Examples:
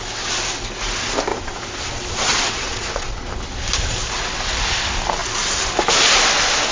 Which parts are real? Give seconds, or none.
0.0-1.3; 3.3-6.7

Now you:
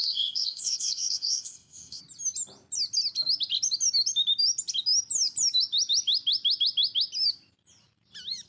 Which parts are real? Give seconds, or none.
2.0-8.5

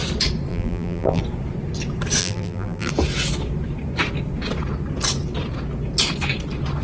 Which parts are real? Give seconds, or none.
0.0-0.5; 1.2-2.2; 2.9-6.8

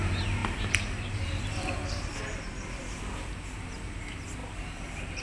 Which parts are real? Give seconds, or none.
0.0-0.4; 1.4-1.8; 2.5-4.4

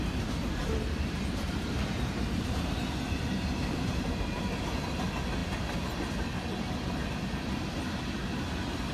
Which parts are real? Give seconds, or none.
0.0-0.6; 4.9-8.9

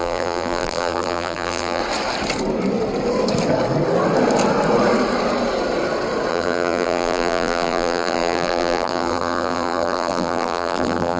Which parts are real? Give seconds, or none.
1.8-6.3

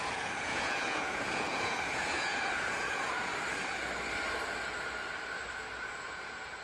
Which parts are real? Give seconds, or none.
3.3-5.9

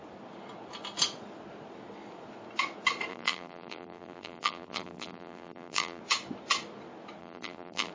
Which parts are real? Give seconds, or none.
0.0-3.1; 6.0-7.2